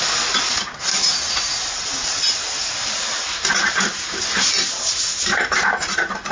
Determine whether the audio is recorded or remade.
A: recorded